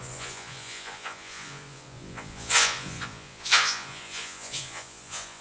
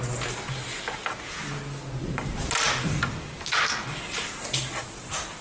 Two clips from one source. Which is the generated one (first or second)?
first